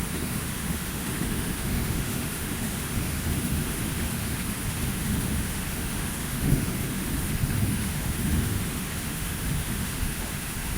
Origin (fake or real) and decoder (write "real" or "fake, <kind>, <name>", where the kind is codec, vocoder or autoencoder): fake, autoencoder, DAC-VAE